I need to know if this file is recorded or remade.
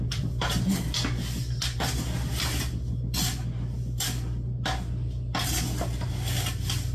recorded